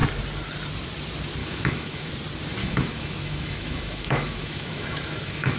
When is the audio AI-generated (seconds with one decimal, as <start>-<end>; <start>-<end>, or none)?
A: 1.4-2.1; 2.6-5.6